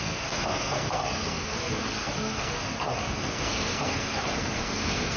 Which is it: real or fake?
fake